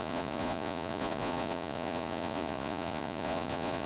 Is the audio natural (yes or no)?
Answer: no